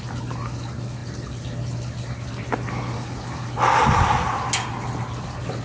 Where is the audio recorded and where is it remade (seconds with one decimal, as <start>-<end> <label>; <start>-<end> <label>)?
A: 0.0-5.6 recorded